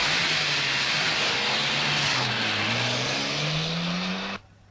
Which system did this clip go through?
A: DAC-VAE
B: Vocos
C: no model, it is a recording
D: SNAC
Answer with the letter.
C